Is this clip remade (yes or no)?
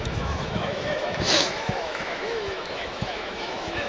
yes